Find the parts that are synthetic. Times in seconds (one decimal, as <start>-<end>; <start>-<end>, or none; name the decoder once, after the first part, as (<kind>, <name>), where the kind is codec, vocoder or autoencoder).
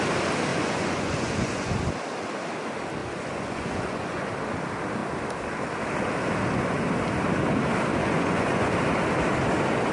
0.5-1.7 (vocoder, Vocos); 3.0-4.3; 8.0-8.7